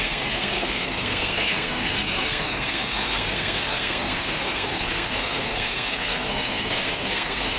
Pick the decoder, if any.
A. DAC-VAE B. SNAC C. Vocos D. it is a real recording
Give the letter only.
B